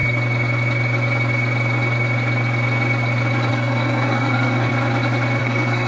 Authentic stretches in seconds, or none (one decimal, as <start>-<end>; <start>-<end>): 0.0-3.5; 4.7-5.4